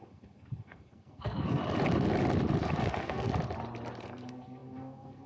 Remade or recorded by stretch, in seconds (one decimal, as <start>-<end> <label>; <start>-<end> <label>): 0.0-1.6 remade; 1.6-2.8 recorded; 2.8-3.3 remade; 3.3-4.0 recorded; 4.0-5.3 remade